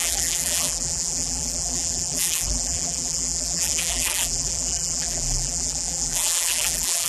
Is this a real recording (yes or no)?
no